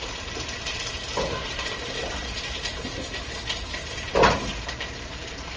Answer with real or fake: real